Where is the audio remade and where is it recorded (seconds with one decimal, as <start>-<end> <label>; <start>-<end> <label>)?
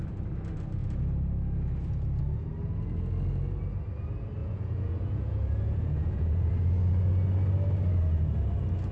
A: 0.0-4.4 recorded; 4.4-6.5 remade; 6.5-8.9 recorded